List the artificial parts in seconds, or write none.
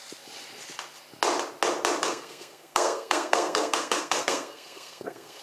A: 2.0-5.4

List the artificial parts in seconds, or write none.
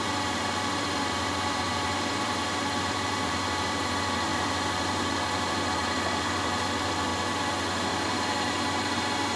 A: 0.0-7.1; 7.9-9.4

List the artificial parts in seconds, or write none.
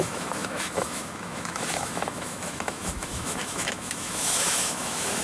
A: 0.0-5.2